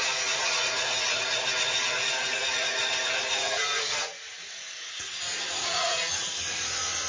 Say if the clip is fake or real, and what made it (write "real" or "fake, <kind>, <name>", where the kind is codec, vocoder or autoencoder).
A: fake, vocoder, Vocos